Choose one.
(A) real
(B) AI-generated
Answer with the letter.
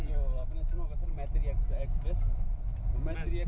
A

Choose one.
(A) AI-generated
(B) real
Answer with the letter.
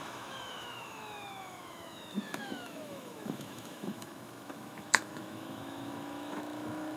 A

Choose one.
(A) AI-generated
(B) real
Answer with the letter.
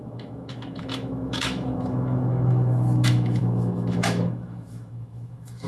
A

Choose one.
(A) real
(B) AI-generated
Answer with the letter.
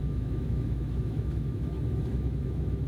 B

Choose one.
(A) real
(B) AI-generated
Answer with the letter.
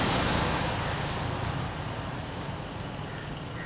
A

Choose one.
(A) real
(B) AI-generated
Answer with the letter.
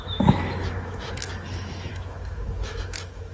B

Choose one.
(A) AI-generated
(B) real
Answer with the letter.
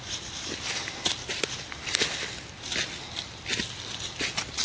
B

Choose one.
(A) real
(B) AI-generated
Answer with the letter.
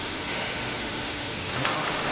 B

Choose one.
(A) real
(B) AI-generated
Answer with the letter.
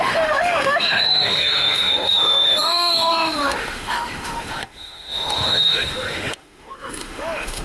B